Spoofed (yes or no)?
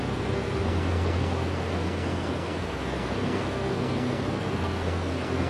yes